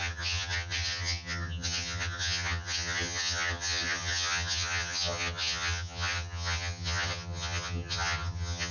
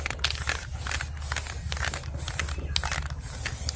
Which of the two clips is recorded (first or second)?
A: second